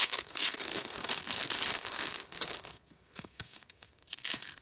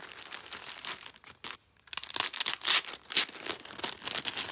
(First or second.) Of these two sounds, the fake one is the first